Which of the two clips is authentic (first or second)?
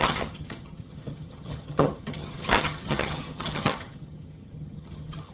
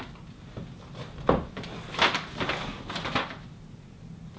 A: second